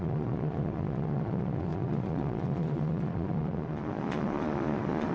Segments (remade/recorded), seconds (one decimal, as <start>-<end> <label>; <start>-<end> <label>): 0.0-5.1 remade